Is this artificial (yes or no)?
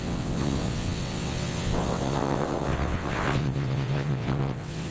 yes